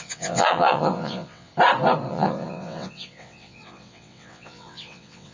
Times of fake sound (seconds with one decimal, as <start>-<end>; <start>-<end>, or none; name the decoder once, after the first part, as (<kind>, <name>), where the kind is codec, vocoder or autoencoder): 0.0-1.5 (vocoder, WaveNeXt); 2.1-5.3